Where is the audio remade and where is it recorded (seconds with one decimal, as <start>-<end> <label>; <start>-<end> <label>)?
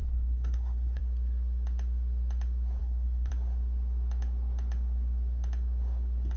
0.0-1.0 remade; 1.0-2.8 recorded; 2.8-3.3 remade; 3.3-6.4 recorded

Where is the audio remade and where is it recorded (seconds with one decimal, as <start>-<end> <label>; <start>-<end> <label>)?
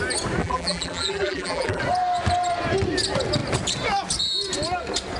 0.0-0.4 recorded; 0.4-1.8 remade; 1.8-5.2 recorded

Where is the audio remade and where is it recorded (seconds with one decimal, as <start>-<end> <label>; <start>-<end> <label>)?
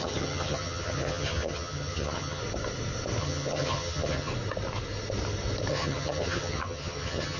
0.0-2.4 remade; 2.4-3.2 recorded; 3.2-4.3 remade; 4.3-5.7 recorded; 5.7-7.4 remade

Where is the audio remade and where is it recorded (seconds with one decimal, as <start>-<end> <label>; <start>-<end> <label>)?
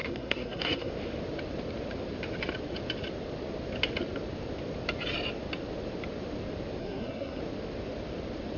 0.0-0.9 remade; 0.9-6.8 recorded; 6.8-7.4 remade; 7.4-8.6 recorded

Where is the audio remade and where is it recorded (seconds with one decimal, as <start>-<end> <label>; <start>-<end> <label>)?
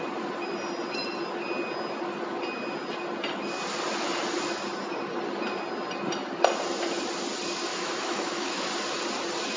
0.0-7.7 recorded; 7.7-8.7 remade; 8.7-9.6 recorded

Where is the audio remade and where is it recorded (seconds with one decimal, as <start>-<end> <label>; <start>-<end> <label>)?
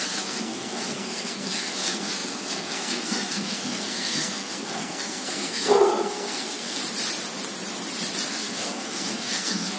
0.0-6.8 remade; 6.8-8.3 recorded; 8.3-9.8 remade